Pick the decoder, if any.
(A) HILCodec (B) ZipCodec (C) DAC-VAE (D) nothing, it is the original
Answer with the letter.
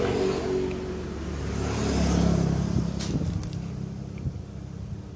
D